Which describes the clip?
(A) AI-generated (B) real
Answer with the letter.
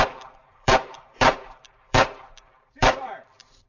A